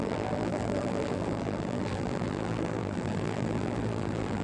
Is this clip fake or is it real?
fake